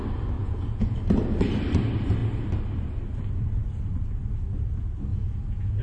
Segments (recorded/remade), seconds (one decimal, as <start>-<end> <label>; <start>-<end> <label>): 0.0-0.4 recorded; 0.4-1.0 remade; 1.0-5.1 recorded; 5.1-5.8 remade